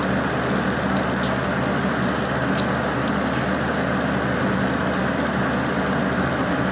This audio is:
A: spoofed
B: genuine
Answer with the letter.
B